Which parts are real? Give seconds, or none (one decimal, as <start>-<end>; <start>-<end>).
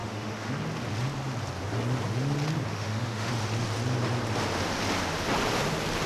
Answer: 0.5-2.7; 3.3-6.1